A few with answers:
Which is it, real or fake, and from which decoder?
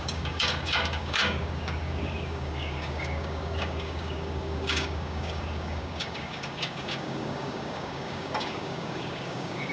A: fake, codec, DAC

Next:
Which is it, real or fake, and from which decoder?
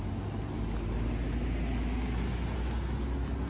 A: real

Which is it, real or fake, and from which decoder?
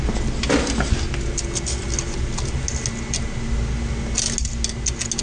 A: real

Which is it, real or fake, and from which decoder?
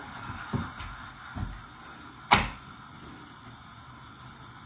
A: real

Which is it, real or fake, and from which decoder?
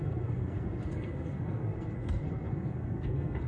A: fake, codec, SNAC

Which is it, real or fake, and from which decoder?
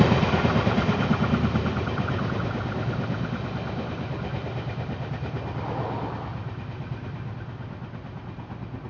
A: real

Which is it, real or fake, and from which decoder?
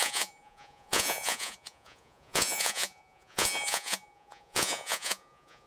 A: fake, vocoder, Vocos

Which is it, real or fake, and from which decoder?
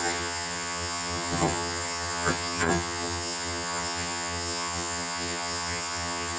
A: fake, vocoder, HiFi-GAN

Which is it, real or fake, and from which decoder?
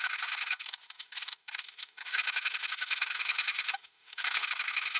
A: fake, autoencoder, DAC-VAE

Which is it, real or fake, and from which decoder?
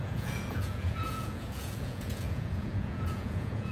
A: fake, vocoder, Vocos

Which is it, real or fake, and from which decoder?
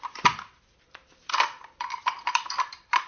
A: fake, vocoder, BigVGAN v2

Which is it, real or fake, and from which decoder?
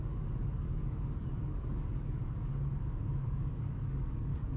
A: fake, codec, DAC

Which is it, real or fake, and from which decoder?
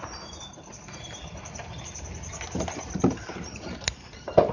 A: real